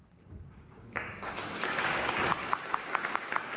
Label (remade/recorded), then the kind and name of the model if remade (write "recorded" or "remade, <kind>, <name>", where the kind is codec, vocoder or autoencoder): remade, codec, DAC